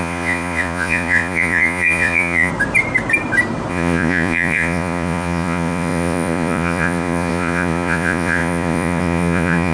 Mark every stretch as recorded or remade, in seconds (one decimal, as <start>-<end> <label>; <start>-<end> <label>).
0.0-2.5 remade; 2.5-3.7 recorded; 3.7-9.7 remade